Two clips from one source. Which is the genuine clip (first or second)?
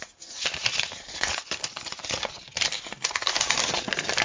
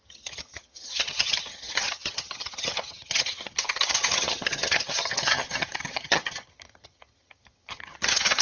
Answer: first